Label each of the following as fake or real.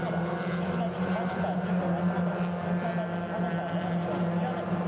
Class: real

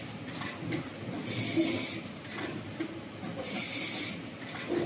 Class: real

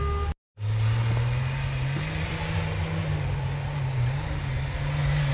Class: real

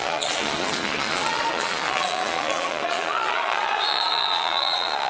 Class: fake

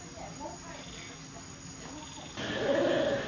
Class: real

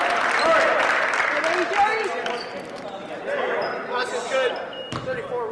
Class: real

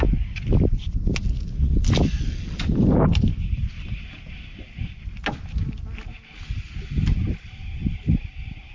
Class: real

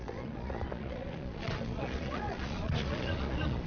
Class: fake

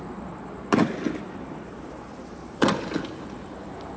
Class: real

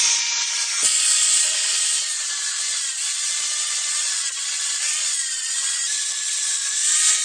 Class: fake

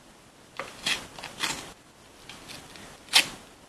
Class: real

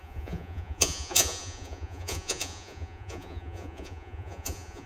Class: fake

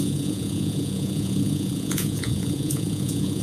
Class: fake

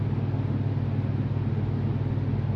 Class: real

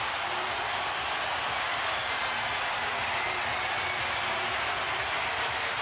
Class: real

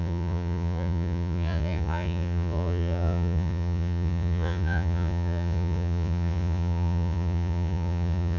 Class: fake